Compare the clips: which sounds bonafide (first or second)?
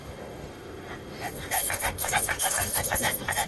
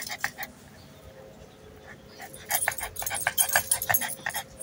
second